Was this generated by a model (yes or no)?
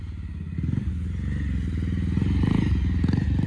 no